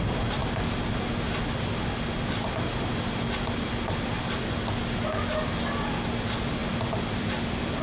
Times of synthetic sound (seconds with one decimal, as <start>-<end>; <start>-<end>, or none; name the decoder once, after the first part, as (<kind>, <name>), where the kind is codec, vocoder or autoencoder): none